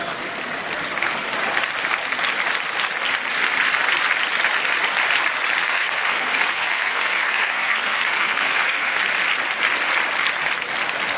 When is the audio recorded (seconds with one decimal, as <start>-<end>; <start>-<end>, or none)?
0.0-5.6; 9.0-11.2